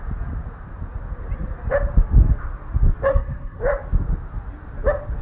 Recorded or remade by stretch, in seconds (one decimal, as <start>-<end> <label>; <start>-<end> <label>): 0.0-3.1 recorded; 3.1-3.6 remade; 3.6-5.2 recorded

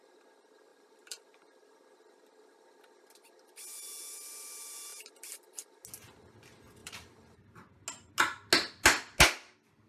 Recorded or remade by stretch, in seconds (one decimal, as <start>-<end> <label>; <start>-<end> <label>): 0.0-0.7 recorded; 0.7-1.4 remade; 1.4-6.8 recorded; 6.8-7.7 remade; 7.7-9.9 recorded

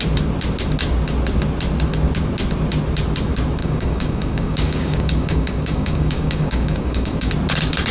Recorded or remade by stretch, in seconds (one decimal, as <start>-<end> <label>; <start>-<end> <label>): 0.0-3.6 recorded; 3.6-7.3 remade; 7.3-7.9 recorded

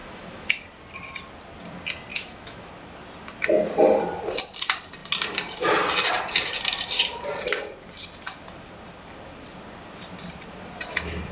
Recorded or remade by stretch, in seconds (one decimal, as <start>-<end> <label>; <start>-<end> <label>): 0.0-0.6 remade; 0.6-2.1 recorded; 2.1-2.7 remade; 2.7-11.3 recorded

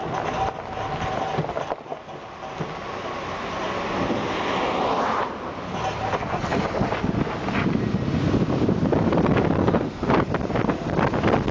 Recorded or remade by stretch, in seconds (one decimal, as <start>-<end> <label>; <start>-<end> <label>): 0.0-9.6 recorded; 9.6-10.1 remade; 10.1-11.5 recorded

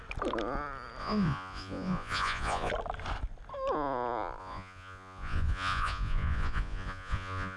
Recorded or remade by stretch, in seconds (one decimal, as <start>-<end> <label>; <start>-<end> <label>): 0.0-1.0 recorded; 1.0-2.7 remade; 2.7-4.4 recorded; 4.4-7.6 remade

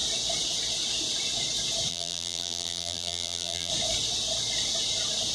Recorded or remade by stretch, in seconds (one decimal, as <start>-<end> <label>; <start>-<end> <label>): 0.0-1.9 recorded; 1.9-3.7 remade; 3.7-5.3 recorded

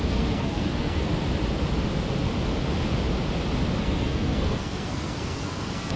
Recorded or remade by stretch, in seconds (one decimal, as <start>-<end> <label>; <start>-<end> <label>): 0.0-1.1 remade; 1.1-3.8 recorded; 3.8-6.0 remade